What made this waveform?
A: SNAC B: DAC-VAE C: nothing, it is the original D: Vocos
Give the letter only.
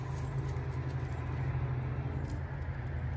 C